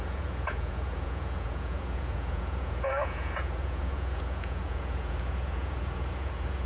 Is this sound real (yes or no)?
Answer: no